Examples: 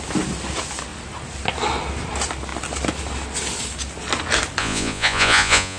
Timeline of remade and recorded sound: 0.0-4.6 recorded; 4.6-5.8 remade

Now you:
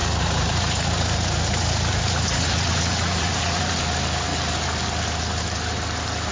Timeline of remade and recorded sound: 0.0-3.8 remade; 3.8-6.3 recorded

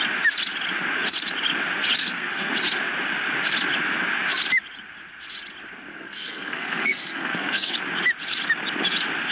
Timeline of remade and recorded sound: 0.0-2.0 recorded; 2.0-2.5 remade; 2.5-5.9 recorded; 5.9-7.7 remade; 7.7-9.3 recorded

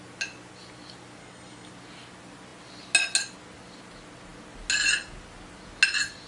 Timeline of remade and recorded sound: 0.0-1.2 recorded; 1.2-1.7 remade; 1.7-6.3 recorded

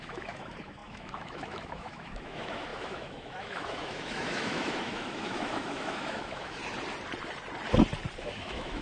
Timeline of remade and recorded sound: 0.0-6.6 remade; 6.6-8.2 recorded; 8.2-8.8 remade

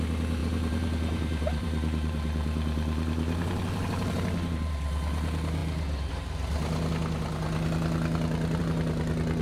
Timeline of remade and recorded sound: 0.0-0.4 recorded; 0.4-4.7 remade; 4.7-9.4 recorded